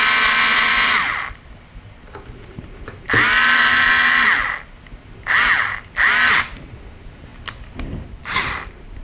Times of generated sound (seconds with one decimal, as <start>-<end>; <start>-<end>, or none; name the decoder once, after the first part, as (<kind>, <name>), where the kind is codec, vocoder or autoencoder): none

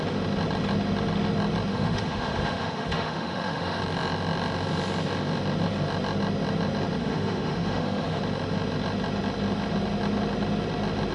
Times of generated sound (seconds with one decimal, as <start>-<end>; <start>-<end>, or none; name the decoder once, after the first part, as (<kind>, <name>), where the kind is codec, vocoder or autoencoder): 1.7-3.8 (autoencoder, DAC-VAE); 7.0-8.2

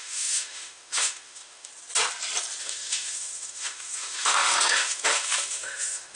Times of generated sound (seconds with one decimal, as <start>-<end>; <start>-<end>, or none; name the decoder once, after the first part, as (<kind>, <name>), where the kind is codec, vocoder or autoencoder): 0.0-1.7 (autoencoder, DAC-VAE); 2.6-6.2

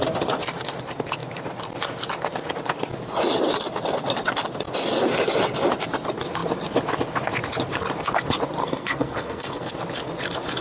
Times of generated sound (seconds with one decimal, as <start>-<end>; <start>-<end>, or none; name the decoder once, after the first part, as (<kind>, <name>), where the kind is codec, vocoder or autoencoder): 8.6-9.7 (codec, SNAC)

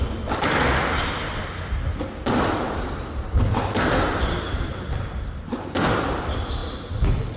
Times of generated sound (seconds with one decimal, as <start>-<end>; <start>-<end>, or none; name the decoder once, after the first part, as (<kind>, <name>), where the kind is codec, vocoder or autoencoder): none

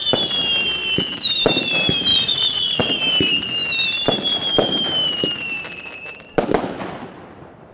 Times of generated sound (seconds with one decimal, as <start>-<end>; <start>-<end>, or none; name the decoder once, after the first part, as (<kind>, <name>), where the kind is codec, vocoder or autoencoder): 2.1-3.0 (vocoder, Vocos)

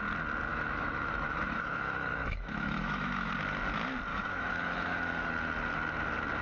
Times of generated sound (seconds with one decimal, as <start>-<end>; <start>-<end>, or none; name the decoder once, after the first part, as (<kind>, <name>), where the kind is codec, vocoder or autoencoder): 0.5-3.3 (autoencoder, DAC-VAE); 4.1-5.3

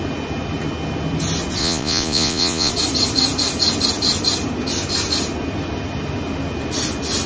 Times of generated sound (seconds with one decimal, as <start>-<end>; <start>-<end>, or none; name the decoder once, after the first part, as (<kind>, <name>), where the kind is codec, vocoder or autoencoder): 1.6-2.7 (vocoder, Vocos)